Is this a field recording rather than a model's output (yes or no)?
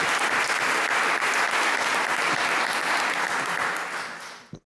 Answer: yes